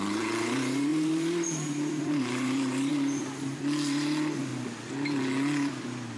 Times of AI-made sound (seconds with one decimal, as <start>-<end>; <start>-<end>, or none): 0.0-4.5